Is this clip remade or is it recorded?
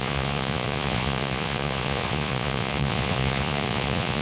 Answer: remade